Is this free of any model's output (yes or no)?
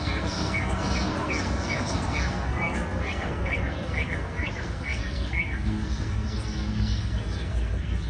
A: no